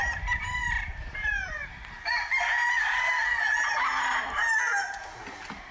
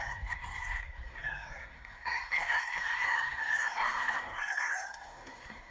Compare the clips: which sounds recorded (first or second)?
first